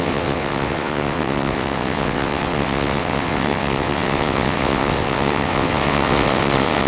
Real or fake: fake